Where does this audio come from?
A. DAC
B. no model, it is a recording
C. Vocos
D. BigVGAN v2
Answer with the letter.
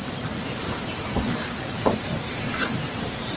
D